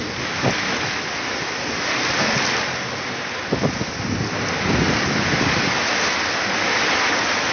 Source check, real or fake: real